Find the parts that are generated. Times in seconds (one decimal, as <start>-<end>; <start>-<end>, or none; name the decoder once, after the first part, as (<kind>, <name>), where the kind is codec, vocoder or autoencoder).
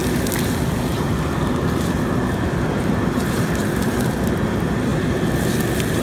none